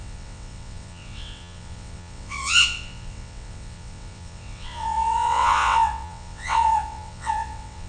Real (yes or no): no